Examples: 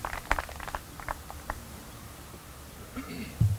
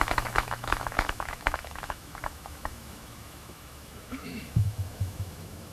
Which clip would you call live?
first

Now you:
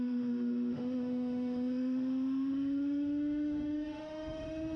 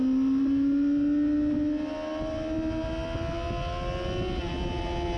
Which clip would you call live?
second